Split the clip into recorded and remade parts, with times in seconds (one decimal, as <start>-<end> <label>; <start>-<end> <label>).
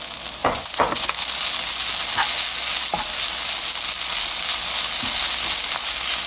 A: 0.0-0.4 recorded; 0.4-1.1 remade; 1.1-6.3 recorded